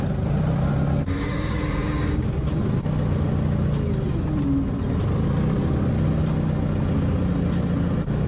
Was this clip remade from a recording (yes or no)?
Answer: no